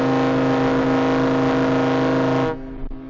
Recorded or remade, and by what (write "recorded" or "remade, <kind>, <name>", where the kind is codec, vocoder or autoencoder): recorded